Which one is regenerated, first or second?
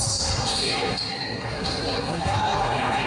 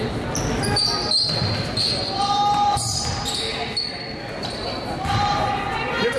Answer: first